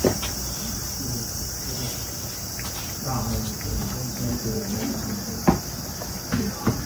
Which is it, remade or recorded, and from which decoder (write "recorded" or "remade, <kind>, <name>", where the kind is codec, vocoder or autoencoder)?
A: remade, vocoder, BigVGAN v2